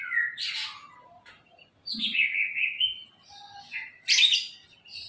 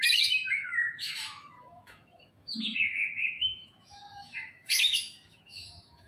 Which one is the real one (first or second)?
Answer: first